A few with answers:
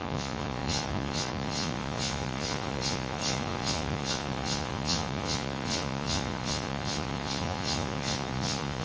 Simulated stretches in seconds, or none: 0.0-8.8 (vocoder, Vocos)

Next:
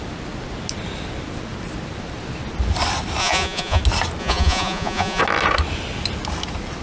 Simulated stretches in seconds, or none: 3.2-3.8 (vocoder, Vocos); 4.2-5.2

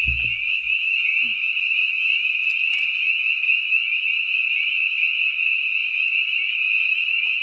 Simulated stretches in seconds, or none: 5.8-6.6 (vocoder, BigVGAN v2)